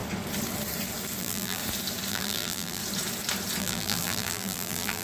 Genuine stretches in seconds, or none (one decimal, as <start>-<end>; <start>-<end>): 0.0-1.2; 1.6-2.1; 2.8-3.6